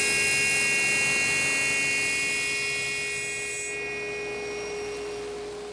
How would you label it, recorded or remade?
recorded